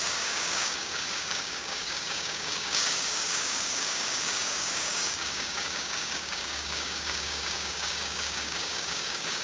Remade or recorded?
remade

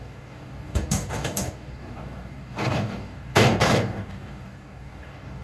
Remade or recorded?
remade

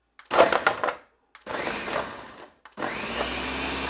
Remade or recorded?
recorded